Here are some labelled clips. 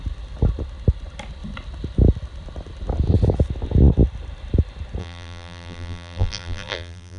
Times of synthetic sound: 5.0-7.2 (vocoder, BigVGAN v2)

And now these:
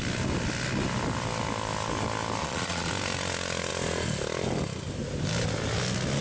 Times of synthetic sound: 2.4-2.9 (vocoder, Vocos)

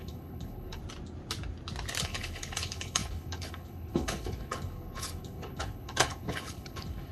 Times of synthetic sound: 0.0-0.8 (codec, HILCodec); 2.0-7.1

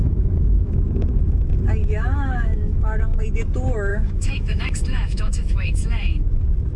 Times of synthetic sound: 0.0-0.8 (autoencoder, DAC-VAE); 1.8-3.2; 3.9-6.2

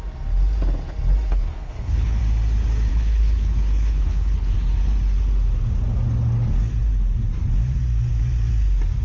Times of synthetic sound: 1.3-2.2 (codec, HILCodec); 2.9-4.5

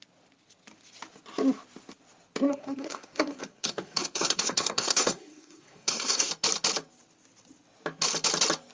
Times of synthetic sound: 2.5-6.3 (codec, SNAC)

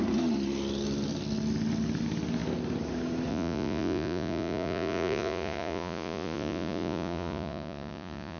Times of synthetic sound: 3.3-8.4 (vocoder, Vocos)